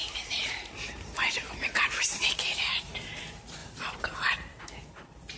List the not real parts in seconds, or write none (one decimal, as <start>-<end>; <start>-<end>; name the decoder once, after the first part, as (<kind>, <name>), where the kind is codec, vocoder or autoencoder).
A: 0.0-3.2 (vocoder, BigVGAN v2); 3.6-4.6